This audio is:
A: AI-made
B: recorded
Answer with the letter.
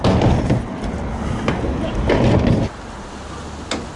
B